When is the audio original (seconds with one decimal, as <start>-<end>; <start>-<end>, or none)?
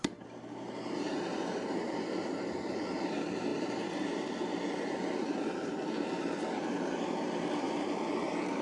none